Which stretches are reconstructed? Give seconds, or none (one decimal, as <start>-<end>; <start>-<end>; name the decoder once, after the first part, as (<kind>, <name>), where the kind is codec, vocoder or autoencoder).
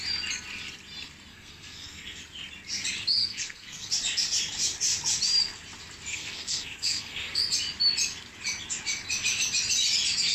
1.3-2.2 (codec, SNAC); 3.2-3.9; 6.1-7.4